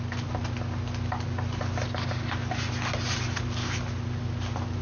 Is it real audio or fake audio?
real